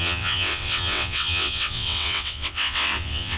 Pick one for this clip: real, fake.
fake